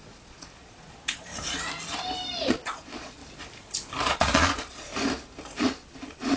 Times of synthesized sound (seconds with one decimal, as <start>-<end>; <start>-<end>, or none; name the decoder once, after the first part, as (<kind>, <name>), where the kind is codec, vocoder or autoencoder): 0.0-1.3 (vocoder, Vocos); 2.5-3.2; 4.1-4.9; 5.6-6.4